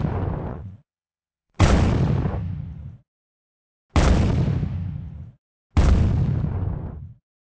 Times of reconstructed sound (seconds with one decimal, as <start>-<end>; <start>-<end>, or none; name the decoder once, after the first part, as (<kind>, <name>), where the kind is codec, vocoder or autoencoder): 0.5-1.7 (vocoder, Vocos)